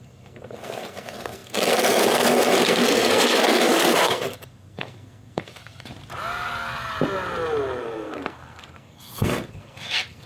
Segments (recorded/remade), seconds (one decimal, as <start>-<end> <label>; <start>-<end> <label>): 0.0-5.9 remade; 5.9-7.8 recorded; 7.8-10.3 remade